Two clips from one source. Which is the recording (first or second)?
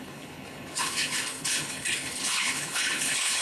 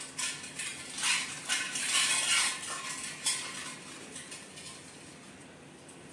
second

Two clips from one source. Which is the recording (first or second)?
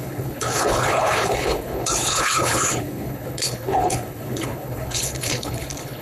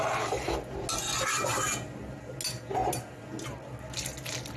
second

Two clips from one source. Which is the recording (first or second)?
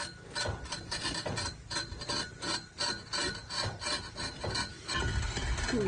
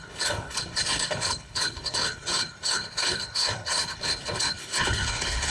first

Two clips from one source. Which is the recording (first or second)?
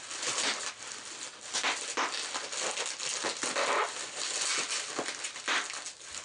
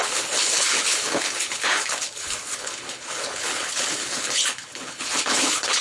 first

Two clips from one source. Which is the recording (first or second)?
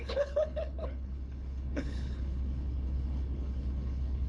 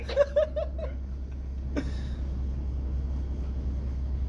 second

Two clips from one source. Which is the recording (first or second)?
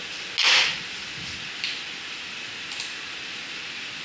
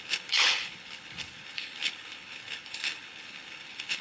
first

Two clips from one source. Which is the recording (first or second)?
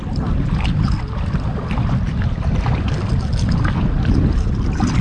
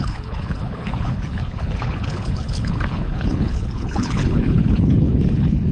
first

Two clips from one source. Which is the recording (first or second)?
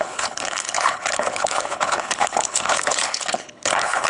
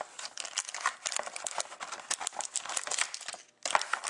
second